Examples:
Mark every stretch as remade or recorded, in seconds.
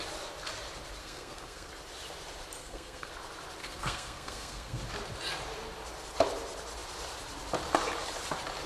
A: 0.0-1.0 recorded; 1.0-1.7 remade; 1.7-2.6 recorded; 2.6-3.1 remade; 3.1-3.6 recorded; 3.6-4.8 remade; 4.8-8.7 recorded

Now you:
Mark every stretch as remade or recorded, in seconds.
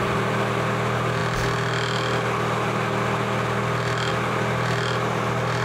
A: 0.0-5.6 recorded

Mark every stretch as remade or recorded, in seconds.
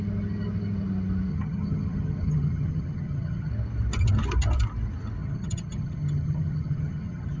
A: 0.0-1.3 recorded; 1.3-3.5 remade; 3.5-5.2 recorded; 5.2-7.4 remade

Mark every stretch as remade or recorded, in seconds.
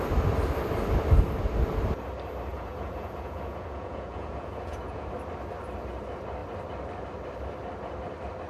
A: 0.0-2.5 recorded; 2.5-5.1 remade; 5.1-8.5 recorded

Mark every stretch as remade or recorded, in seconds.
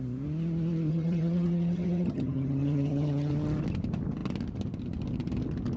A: 0.0-0.9 recorded; 0.9-3.3 remade; 3.3-5.8 recorded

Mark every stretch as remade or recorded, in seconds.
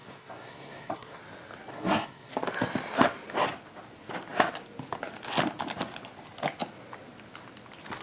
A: 0.0-1.2 remade; 1.2-1.7 recorded; 1.7-2.3 remade; 2.3-8.0 recorded